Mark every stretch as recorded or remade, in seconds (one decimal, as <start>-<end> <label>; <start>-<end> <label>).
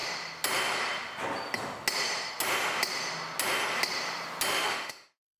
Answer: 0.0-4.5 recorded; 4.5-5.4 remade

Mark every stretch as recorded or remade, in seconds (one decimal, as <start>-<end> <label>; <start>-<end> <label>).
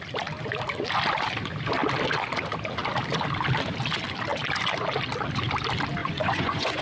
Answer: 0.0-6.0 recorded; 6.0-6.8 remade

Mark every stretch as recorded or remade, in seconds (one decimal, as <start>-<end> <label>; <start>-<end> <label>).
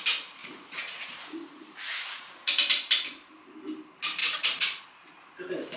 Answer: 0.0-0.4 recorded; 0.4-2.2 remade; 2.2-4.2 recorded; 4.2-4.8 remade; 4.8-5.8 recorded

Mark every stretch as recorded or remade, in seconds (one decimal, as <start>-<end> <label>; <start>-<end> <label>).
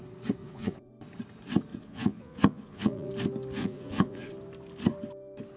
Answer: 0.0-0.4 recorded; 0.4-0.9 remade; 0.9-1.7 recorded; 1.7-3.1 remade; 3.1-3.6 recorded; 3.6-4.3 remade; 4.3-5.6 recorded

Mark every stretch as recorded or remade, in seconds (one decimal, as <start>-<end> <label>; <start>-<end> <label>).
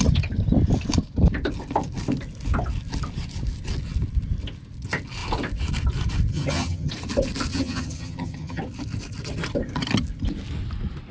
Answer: 0.0-6.3 recorded; 6.3-6.9 remade; 6.9-7.5 recorded; 7.5-8.6 remade; 8.6-11.1 recorded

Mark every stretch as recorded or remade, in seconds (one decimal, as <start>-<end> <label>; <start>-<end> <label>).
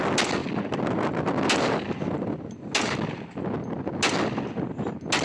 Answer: 0.0-5.2 recorded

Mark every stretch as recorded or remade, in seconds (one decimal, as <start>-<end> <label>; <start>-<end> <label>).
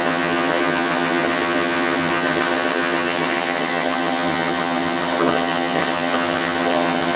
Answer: 0.0-7.2 remade